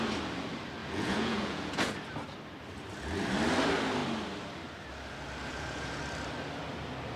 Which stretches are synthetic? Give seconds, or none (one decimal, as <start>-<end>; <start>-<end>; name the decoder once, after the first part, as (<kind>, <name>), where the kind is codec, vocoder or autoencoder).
0.8-1.9 (vocoder, Vocos); 5.5-6.0